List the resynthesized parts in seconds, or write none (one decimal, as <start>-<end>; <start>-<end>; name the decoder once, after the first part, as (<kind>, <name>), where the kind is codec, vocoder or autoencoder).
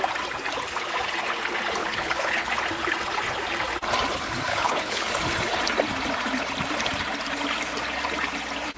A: 1.8-2.5 (codec, HILCodec); 4.5-5.1